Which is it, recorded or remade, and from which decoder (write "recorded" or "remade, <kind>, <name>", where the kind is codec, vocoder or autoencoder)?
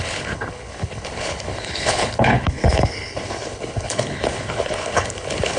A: remade, codec, HILCodec